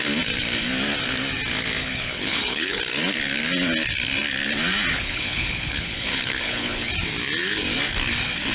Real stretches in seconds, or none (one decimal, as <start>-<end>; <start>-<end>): 0.0-1.8; 2.8-4.9; 6.9-8.5